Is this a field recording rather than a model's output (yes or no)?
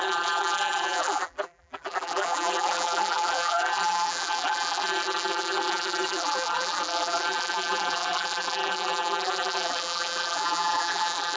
no